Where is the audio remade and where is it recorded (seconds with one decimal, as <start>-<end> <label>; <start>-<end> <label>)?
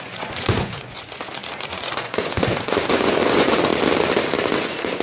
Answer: 0.0-3.7 remade; 3.7-4.6 recorded; 4.6-5.0 remade